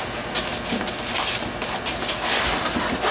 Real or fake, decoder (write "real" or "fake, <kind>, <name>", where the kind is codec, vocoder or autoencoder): real